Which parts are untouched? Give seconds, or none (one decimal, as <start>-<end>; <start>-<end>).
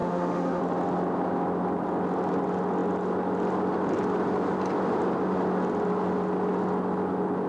0.6-7.5